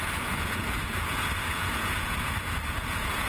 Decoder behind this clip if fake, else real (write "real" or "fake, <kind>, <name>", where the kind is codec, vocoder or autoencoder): fake, vocoder, Vocos